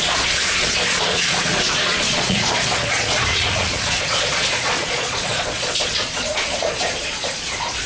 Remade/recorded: remade